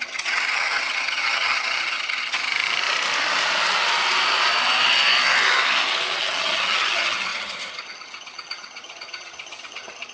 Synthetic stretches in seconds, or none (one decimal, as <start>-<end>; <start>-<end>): 0.0-2.5; 6.2-10.1